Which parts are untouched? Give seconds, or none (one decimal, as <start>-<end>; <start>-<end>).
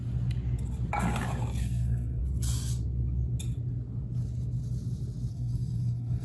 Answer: 0.0-1.6; 2.2-5.3